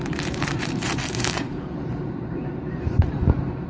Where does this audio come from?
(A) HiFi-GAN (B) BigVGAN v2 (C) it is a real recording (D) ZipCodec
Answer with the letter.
B